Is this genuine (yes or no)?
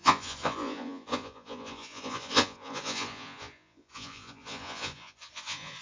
no